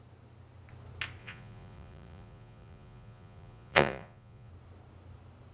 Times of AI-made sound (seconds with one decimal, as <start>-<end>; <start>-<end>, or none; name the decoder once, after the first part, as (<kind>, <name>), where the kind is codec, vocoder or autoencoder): 1.2-4.5 (vocoder, Vocos)

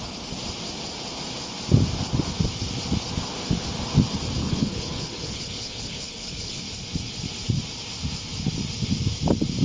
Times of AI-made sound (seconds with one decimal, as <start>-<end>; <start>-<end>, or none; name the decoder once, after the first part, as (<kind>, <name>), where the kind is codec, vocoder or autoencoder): 4.4-6.6 (codec, HILCodec)

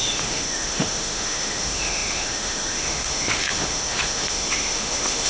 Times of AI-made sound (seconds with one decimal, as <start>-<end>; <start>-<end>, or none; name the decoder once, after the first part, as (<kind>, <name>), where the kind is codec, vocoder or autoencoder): 0.0-5.3 (autoencoder, DAC-VAE)

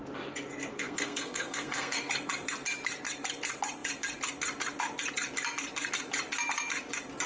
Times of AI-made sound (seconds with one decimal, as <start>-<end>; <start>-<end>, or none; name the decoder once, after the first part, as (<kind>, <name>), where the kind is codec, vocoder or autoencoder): 0.7-2.1 (codec, SNAC)